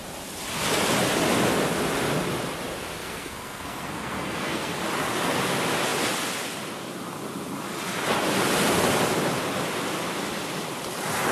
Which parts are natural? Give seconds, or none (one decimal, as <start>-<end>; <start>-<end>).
0.0-3.0; 4.8-11.3